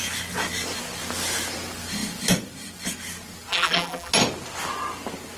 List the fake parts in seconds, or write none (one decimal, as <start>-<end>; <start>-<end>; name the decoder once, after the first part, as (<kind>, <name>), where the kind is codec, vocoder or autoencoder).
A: 3.5-4.1 (vocoder, BigVGAN v2)

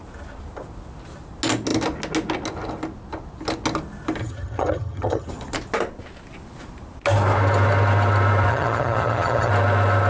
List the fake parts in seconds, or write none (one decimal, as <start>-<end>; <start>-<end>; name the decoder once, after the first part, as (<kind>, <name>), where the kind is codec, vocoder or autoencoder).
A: 4.2-5.3 (vocoder, HiFi-GAN); 8.5-9.5

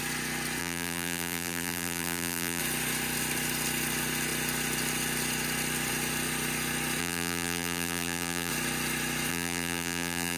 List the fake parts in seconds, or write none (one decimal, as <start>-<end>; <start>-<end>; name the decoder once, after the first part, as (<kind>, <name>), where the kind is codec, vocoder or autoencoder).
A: 0.6-2.6 (vocoder, BigVGAN v2); 7.0-8.5; 9.3-10.4

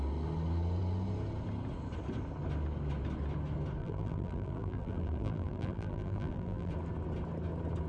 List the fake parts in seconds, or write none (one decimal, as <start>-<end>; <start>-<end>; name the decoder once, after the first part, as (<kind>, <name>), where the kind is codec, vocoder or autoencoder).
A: 3.8-6.7 (vocoder, BigVGAN v2)

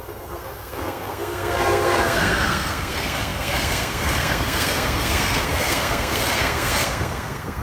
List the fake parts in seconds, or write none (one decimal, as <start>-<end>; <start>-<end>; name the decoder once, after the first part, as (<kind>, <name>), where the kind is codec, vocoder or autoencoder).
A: 0.0-7.6 (codec, SNAC)

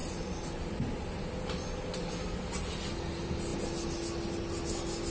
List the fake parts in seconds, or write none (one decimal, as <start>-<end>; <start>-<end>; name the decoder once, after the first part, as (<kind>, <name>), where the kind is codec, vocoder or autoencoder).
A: none

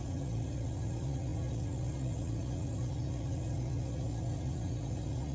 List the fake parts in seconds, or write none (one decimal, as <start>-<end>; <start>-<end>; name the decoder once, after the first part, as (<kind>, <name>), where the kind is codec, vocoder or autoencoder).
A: 0.0-5.3 (vocoder, Vocos)